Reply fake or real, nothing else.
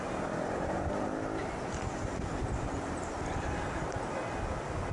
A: real